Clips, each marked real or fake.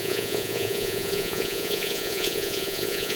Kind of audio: fake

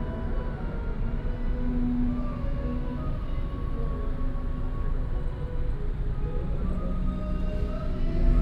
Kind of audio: real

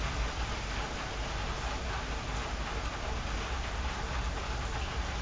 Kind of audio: real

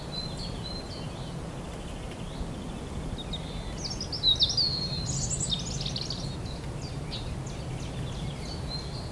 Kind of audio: real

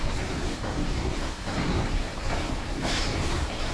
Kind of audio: fake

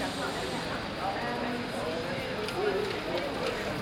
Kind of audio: real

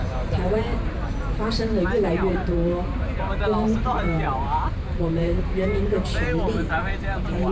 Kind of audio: fake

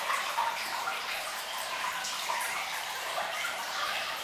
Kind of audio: fake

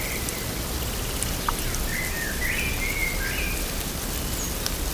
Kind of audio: real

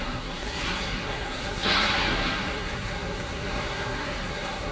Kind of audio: fake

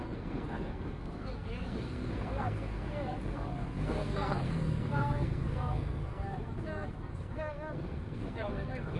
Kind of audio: fake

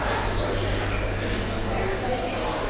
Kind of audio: real